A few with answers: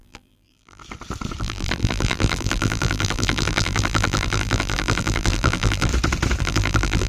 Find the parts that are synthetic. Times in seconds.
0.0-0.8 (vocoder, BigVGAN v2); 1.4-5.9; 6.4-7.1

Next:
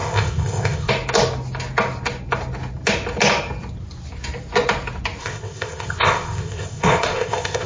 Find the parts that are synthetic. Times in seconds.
0.0-0.9 (codec, ZipCodec); 5.2-7.7

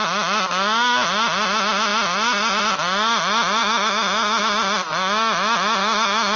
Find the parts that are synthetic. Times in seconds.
3.6-4.4 (codec, DAC); 5.8-6.4

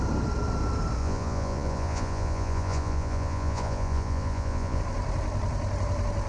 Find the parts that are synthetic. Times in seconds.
1.0-4.8 (vocoder, Vocos)

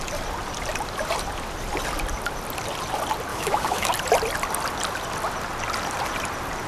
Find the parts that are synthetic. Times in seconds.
3.3-3.9 (autoencoder, DAC-VAE)